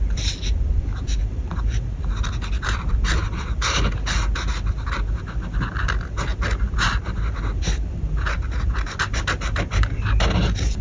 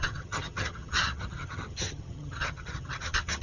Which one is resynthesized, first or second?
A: second